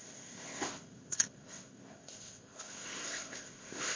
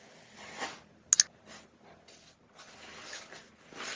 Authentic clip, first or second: second